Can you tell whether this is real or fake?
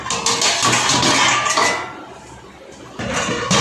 real